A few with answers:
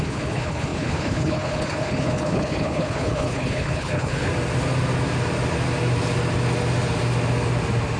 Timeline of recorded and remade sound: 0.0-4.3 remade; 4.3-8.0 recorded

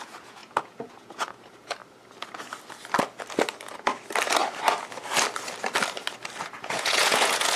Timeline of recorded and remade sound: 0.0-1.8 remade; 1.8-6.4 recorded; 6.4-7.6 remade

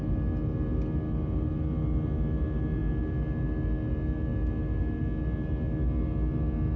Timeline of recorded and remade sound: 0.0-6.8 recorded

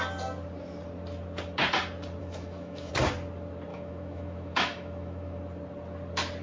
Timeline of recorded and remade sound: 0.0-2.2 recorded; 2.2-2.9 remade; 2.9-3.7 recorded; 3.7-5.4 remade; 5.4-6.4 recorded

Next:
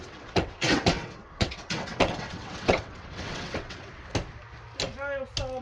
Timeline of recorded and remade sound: 0.0-4.1 remade; 4.1-5.6 recorded

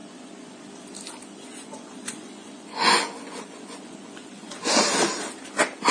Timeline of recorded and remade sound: 0.0-0.6 remade; 0.6-1.5 recorded; 1.5-4.7 remade; 4.7-5.9 recorded

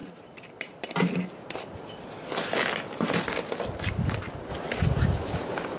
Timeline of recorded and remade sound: 0.0-5.8 recorded

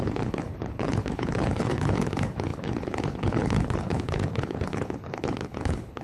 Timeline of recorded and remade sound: 0.0-6.0 remade